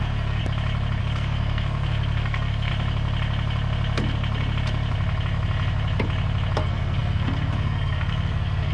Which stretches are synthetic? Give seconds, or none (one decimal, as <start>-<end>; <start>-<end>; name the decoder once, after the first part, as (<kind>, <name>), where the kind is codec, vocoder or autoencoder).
0.0-0.4 (codec, SNAC); 1.0-2.7; 6.6-8.7